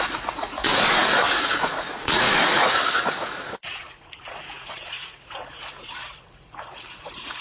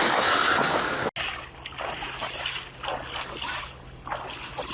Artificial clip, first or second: first